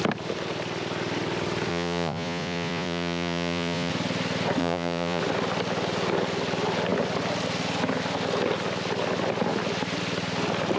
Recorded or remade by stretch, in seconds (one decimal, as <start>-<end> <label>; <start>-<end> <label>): 0.0-1.7 recorded; 1.7-3.9 remade; 3.9-4.6 recorded; 4.6-5.2 remade; 5.2-10.8 recorded